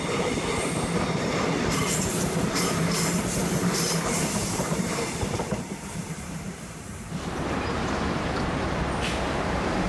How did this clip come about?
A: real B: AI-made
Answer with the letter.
B